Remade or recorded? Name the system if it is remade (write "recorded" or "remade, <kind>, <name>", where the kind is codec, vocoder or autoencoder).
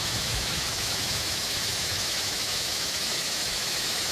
remade, autoencoder, DAC-VAE